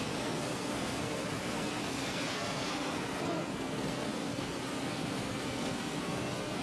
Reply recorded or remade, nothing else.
remade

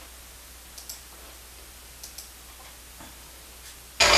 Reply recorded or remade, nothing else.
recorded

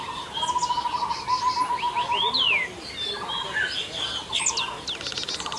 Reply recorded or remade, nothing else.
recorded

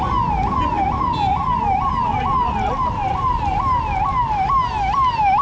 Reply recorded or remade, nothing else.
recorded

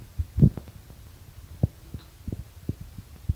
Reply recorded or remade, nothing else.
recorded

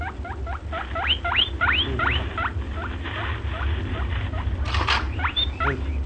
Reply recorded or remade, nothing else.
recorded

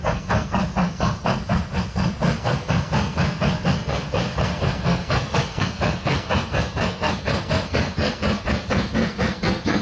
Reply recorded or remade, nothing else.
remade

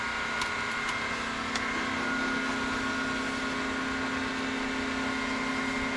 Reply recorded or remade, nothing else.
recorded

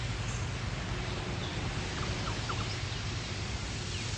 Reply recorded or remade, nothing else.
recorded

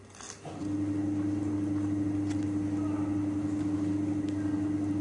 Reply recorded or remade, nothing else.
recorded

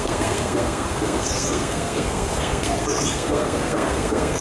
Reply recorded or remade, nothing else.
remade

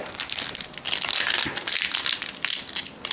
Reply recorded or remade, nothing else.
recorded